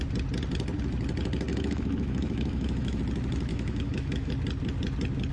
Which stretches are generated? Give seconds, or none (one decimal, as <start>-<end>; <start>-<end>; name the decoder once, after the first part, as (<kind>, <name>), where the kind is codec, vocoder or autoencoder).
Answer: 1.5-3.0 (autoencoder, DAC-VAE); 3.5-4.3